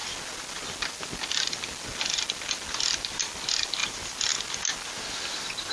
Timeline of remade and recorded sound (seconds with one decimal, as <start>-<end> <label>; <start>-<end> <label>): 0.0-5.7 recorded